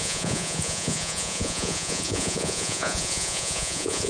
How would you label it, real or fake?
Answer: fake